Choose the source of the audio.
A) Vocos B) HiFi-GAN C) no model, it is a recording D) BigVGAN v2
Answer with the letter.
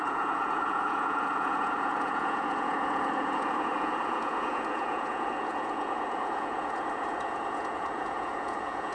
A